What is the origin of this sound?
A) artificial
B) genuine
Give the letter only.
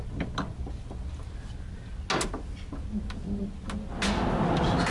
B